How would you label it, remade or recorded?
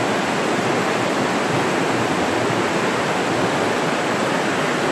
recorded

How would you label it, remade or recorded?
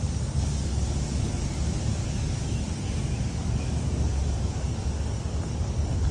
remade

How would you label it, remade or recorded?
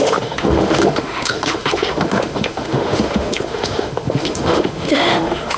remade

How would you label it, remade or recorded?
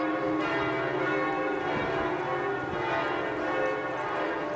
recorded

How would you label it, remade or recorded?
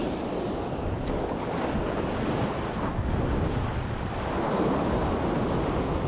recorded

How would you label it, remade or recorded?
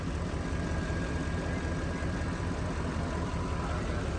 remade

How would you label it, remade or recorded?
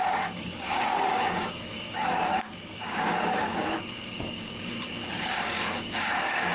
remade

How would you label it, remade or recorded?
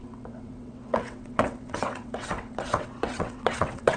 remade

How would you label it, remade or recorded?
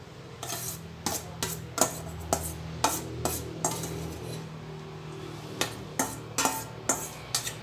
recorded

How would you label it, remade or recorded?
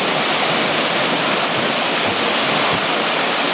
recorded